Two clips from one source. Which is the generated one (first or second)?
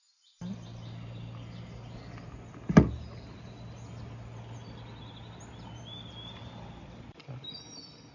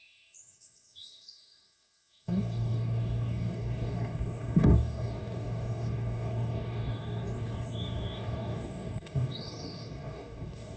second